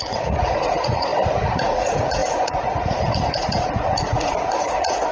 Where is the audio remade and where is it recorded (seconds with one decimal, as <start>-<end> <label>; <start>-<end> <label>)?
0.0-5.1 remade